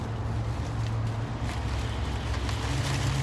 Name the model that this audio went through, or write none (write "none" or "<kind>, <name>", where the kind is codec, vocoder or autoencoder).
none